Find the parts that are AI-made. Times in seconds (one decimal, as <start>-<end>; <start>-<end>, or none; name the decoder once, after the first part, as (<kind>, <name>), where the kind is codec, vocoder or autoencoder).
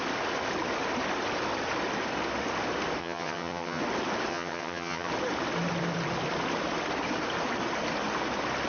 3.0-3.8 (vocoder, HiFi-GAN); 4.3-5.1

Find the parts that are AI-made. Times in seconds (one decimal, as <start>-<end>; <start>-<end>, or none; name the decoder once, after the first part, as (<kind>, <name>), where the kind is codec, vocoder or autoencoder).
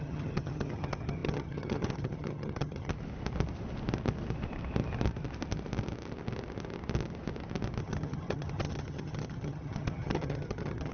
0.0-2.9 (vocoder, HiFi-GAN); 7.8-10.9